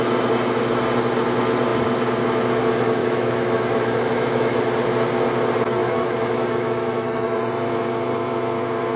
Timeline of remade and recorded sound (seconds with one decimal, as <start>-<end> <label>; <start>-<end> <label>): 0.0-3.0 recorded; 3.0-4.6 remade; 4.6-5.8 recorded; 5.8-7.4 remade; 7.4-9.0 recorded